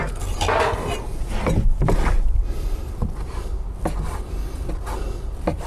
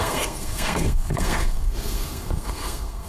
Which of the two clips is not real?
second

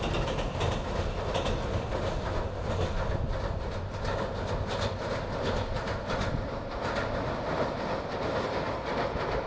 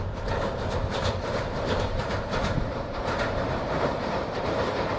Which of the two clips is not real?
second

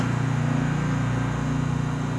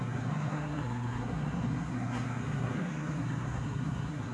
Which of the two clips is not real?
second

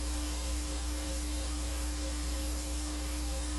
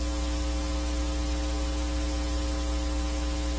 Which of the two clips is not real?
first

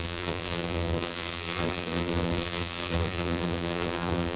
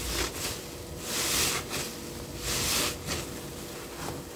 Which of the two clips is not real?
first